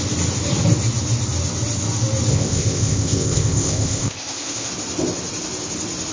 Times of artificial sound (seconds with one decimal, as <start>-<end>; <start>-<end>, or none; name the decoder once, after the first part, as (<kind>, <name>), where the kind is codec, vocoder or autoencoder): 2.3-4.7 (codec, ZipCodec)